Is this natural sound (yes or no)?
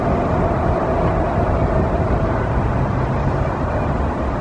yes